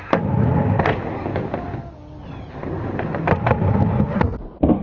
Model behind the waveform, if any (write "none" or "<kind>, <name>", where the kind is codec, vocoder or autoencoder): none